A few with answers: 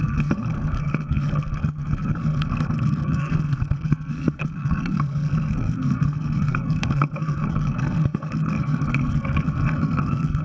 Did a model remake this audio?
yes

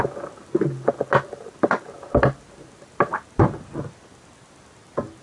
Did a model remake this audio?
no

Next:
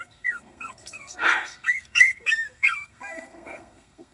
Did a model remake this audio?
yes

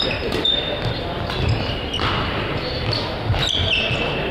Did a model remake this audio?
no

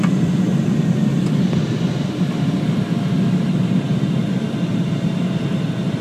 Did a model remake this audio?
no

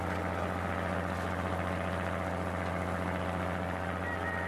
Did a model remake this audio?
no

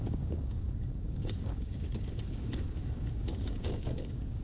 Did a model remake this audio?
yes